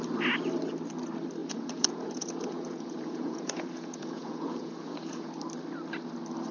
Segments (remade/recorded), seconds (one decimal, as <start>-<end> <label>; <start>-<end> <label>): 0.0-1.4 recorded; 1.4-5.3 remade; 5.3-6.5 recorded